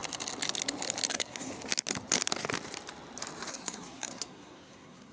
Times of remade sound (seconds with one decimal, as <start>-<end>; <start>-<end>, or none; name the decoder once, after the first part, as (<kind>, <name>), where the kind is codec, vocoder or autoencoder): 1.1-1.5 (codec, SNAC); 3.5-5.1